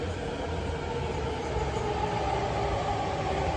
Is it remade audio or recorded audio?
recorded